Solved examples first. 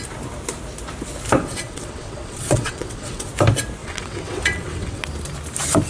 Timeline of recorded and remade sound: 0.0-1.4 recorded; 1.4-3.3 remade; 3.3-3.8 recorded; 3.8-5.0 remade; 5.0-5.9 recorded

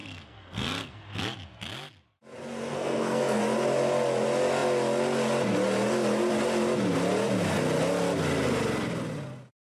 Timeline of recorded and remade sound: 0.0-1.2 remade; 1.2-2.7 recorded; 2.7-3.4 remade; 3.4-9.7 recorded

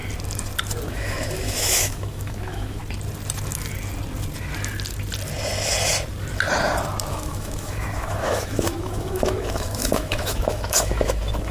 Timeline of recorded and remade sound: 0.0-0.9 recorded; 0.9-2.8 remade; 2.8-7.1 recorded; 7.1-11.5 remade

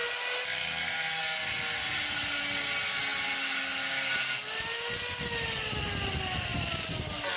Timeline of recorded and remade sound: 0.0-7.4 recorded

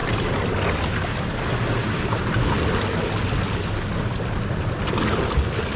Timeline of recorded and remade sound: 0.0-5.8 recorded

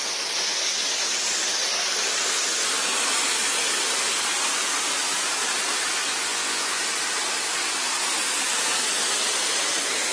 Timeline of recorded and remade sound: 0.0-6.3 recorded; 6.3-6.8 remade; 6.8-10.1 recorded